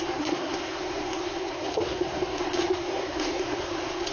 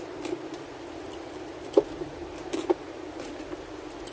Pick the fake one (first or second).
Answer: first